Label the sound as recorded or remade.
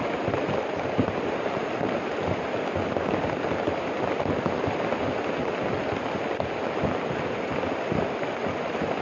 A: recorded